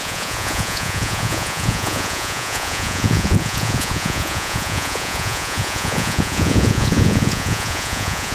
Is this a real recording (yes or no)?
no